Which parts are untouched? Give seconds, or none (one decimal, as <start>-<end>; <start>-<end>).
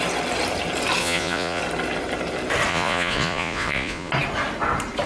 0.0-1.0; 1.6-2.7; 4.1-5.1